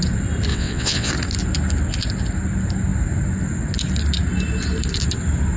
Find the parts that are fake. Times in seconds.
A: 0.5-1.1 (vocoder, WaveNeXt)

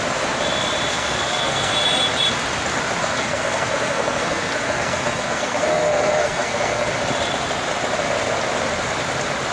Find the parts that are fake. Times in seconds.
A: 0.9-1.7 (codec, SNAC); 3.0-6.9

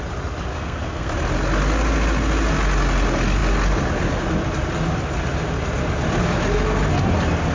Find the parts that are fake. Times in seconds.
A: 0.5-1.1 (codec, SNAC)

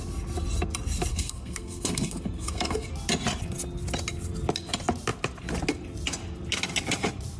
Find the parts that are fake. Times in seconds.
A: 1.1-2.9 (codec, SNAC)

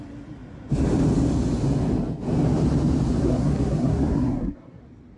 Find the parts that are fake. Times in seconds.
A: 3.2-4.8 (codec, SNAC)

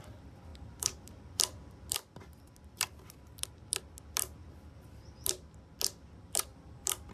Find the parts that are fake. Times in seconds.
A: 0.5-3.1 (vocoder, BigVGAN v2); 4.4-5.2; 6.5-7.1

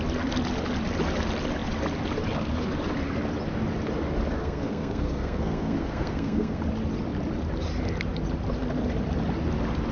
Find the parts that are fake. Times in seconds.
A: 4.4-6.6 (codec, SNAC)

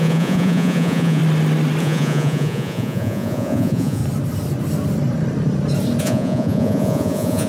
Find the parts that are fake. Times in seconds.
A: 0.0-1.2 (vocoder, Vocos); 1.8-4.0; 6.0-7.5